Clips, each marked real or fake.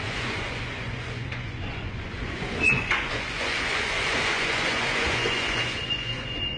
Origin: fake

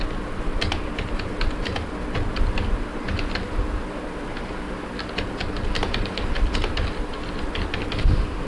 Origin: real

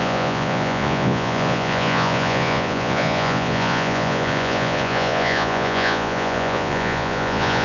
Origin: fake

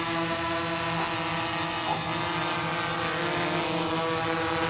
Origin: real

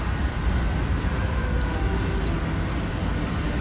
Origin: real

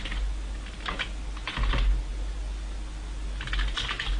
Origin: real